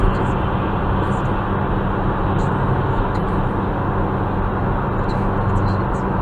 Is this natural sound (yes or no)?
yes